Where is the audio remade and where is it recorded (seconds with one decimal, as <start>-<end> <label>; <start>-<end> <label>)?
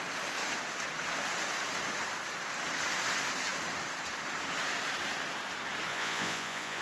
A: 0.0-5.9 recorded; 5.9-6.8 remade